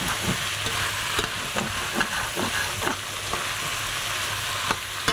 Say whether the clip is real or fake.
real